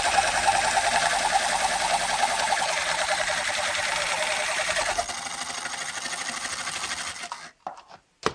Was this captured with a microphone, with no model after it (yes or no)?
yes